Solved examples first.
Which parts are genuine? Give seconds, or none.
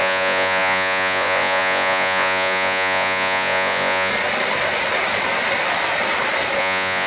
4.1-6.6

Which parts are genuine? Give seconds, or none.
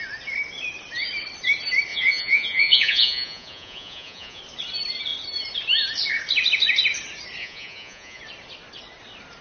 0.0-1.9; 4.4-7.4; 8.2-9.4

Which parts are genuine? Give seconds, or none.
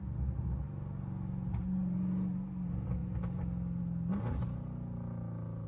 0.0-5.7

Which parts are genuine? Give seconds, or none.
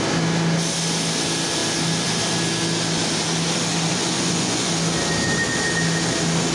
0.0-3.9; 4.7-6.5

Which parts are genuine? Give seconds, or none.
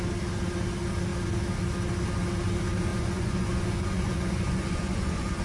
0.0-2.9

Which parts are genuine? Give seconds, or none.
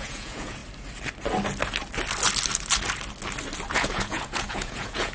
0.6-3.7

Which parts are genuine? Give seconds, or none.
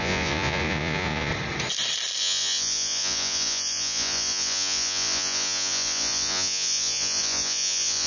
1.3-2.2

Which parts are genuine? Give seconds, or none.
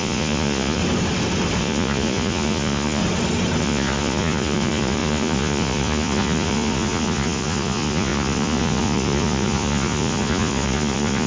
0.8-1.6; 3.0-3.6